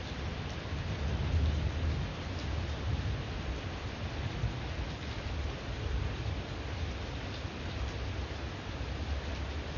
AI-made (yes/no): no